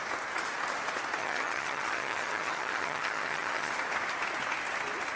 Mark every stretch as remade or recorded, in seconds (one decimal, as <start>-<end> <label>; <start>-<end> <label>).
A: 0.0-1.2 recorded; 1.2-3.7 remade; 3.7-5.2 recorded